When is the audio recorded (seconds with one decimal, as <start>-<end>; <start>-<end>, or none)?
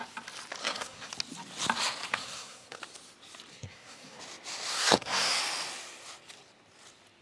0.0-0.6; 1.1-2.1; 2.8-3.5; 4.2-4.7; 5.4-7.2